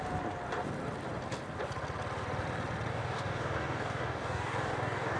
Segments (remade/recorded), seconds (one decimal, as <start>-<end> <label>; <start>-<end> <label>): 0.0-2.9 recorded; 2.9-5.2 remade